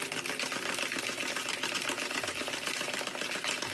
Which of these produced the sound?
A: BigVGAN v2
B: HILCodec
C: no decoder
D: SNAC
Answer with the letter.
C